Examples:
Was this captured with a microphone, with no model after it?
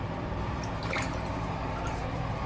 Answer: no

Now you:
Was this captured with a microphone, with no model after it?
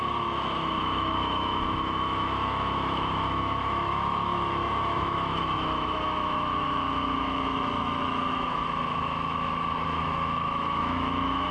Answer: no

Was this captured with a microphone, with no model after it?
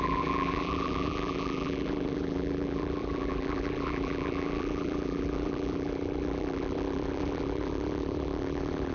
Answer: no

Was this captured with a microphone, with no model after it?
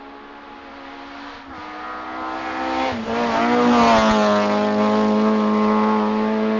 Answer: yes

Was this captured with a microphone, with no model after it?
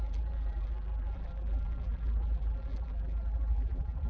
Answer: no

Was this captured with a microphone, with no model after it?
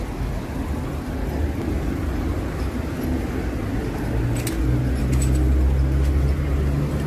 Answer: yes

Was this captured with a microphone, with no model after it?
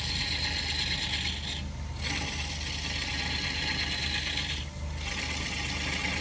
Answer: yes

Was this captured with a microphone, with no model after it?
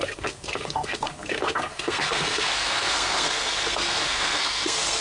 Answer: no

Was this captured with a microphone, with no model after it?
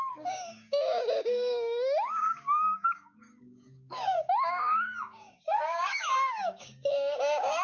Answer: no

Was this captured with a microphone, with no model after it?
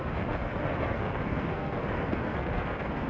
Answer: no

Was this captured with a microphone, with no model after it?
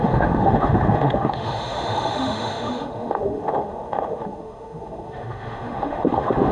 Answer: no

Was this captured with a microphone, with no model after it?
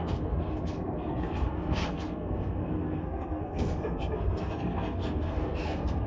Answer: no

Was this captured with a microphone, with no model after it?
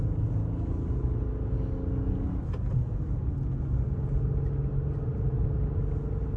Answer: yes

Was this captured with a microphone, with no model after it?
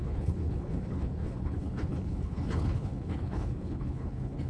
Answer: no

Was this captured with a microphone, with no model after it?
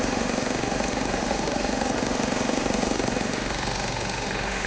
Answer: no